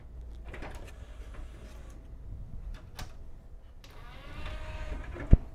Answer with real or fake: real